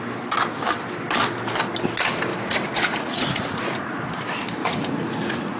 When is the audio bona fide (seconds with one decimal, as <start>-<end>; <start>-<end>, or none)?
0.0-2.3; 4.0-4.6